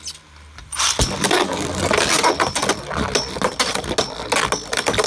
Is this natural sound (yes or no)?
yes